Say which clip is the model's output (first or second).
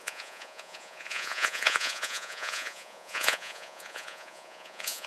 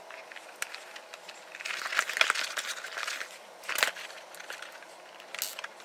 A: first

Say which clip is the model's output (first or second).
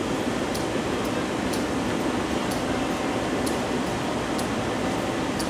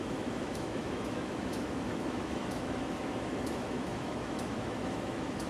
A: second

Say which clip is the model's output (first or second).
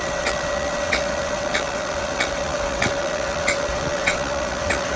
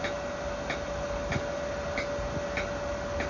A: first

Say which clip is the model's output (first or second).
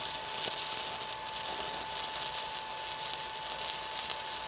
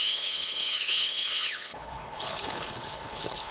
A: second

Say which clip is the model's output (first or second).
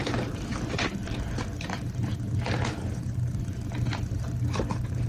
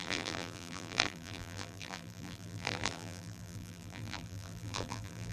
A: second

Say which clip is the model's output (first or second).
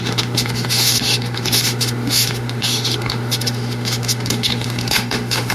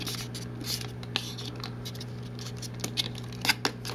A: first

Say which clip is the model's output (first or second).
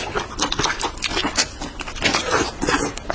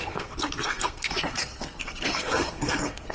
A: second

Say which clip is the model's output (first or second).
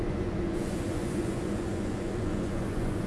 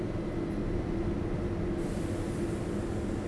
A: first